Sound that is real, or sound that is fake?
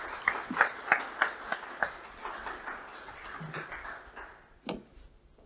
real